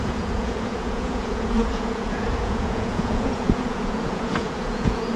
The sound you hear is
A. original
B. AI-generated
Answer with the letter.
B